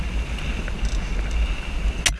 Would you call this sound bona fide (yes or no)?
yes